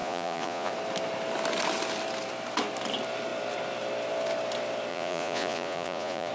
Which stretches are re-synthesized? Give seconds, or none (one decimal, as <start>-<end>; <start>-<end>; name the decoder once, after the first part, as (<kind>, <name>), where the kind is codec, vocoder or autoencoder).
0.0-0.7 (vocoder, Vocos); 4.9-6.3